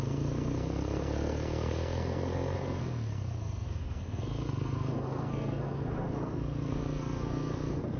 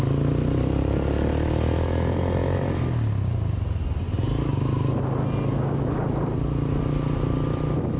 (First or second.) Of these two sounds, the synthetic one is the first